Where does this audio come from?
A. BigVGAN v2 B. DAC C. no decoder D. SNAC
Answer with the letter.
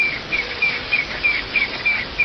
B